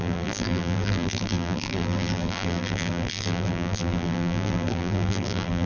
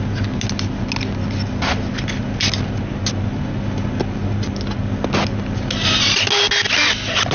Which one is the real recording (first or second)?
second